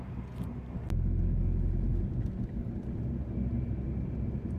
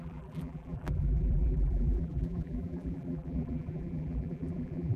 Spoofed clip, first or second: second